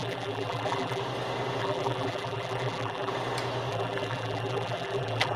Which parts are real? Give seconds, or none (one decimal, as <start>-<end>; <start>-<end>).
1.0-1.6; 3.1-3.7